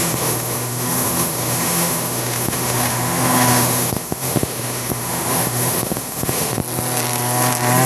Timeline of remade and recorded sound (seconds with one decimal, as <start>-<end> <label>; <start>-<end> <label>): 0.0-6.6 remade; 6.6-7.9 recorded